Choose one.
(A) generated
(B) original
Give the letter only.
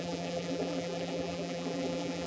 A